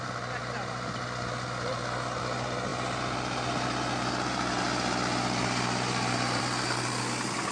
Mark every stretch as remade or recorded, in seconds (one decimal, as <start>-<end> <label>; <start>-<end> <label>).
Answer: 0.0-7.5 recorded